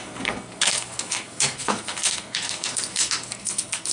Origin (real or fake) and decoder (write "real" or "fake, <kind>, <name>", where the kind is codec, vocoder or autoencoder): fake, codec, SNAC